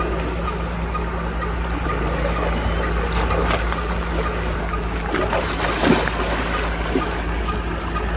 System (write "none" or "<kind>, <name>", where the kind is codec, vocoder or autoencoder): none